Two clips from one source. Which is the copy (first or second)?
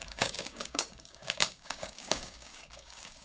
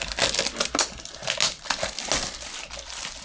first